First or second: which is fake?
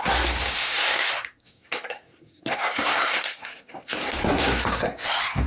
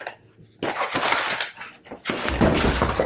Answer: first